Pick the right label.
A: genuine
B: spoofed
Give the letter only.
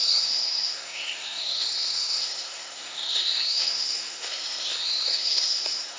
B